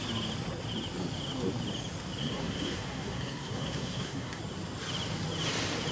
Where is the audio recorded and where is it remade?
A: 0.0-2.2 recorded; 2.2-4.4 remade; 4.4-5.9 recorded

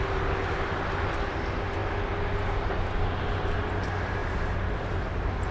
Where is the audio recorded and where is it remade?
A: 0.0-5.5 recorded

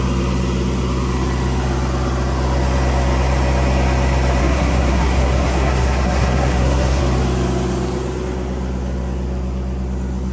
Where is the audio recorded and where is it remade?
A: 0.0-4.4 recorded; 4.4-7.0 remade; 7.0-10.3 recorded

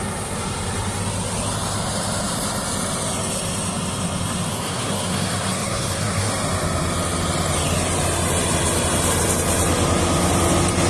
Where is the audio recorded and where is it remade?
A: 0.0-4.5 recorded; 4.5-6.3 remade; 6.3-10.9 recorded

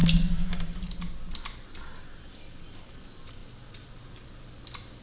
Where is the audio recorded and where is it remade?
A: 0.0-5.0 recorded

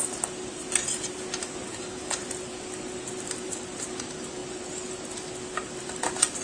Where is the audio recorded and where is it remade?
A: 0.0-6.4 recorded

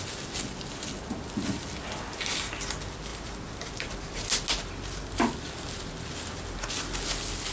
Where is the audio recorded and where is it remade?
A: 0.0-7.5 recorded

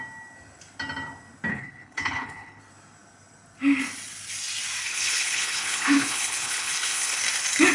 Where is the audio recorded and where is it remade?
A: 0.0-1.5 recorded; 1.5-2.6 remade; 2.6-4.8 recorded; 4.8-7.2 remade; 7.2-7.7 recorded